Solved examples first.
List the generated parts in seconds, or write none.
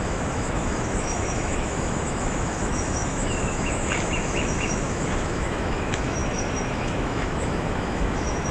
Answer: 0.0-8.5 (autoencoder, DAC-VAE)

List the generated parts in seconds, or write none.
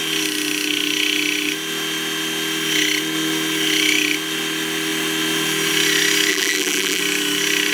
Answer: 6.3-7.0 (vocoder, BigVGAN v2)